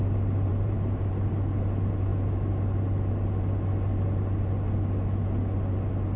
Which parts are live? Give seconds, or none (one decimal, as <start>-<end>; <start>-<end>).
0.0-0.5; 1.3-6.2